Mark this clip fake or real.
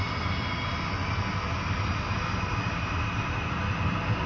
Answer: real